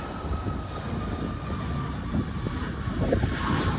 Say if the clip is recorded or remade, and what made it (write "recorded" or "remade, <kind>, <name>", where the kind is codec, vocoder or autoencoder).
recorded